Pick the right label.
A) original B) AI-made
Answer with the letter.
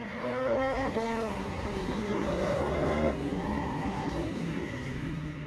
B